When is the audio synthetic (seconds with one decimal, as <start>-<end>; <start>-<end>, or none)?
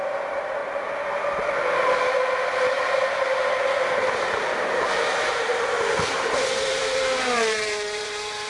0.0-0.6; 4.7-5.5; 6.1-8.5